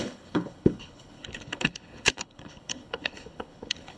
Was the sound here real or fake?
fake